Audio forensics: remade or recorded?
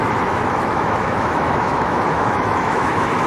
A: remade